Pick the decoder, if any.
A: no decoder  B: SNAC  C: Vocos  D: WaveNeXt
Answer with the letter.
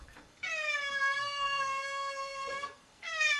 B